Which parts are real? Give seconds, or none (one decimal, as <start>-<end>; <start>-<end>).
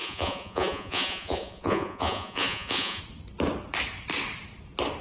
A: 3.0-5.0